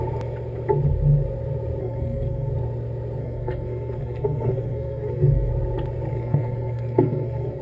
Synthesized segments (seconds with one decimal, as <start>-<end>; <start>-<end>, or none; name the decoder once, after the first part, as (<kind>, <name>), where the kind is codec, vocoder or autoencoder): 1.8-2.5 (codec, SNAC); 3.2-5.5; 6.1-7.6